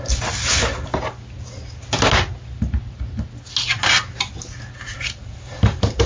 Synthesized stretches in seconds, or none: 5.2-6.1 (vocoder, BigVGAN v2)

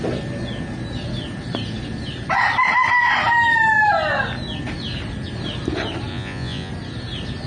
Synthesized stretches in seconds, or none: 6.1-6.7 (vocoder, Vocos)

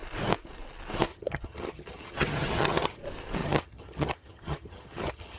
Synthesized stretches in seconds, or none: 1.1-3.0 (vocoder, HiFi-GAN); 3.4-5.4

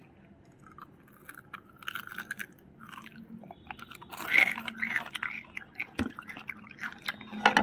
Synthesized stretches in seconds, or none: none

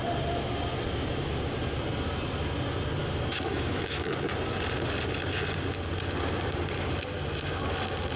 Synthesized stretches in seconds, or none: 3.0-4.1 (autoencoder, DAC-VAE)

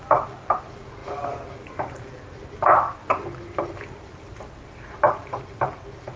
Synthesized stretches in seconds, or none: none

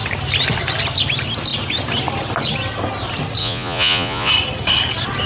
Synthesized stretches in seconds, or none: 3.4-4.3 (vocoder, Vocos)

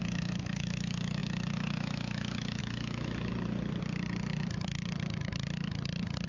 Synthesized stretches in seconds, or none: 0.0-3.3 (autoencoder, DAC-VAE)